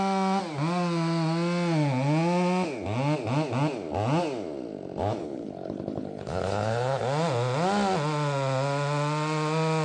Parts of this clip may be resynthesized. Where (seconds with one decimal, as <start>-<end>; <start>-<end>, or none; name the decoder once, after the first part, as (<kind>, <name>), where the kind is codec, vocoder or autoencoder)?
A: 5.2-7.0 (codec, HILCodec)